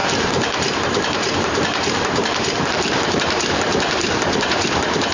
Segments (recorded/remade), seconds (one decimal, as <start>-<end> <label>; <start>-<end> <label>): 0.0-5.1 remade